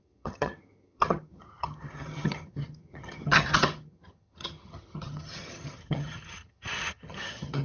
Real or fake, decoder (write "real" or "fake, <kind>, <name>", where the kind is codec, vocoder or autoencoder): fake, vocoder, HiFi-GAN